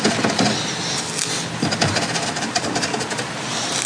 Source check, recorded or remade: recorded